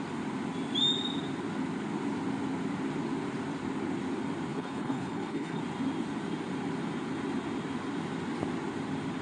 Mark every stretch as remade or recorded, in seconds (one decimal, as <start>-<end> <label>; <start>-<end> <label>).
0.0-4.5 recorded; 4.5-5.6 remade; 5.6-9.2 recorded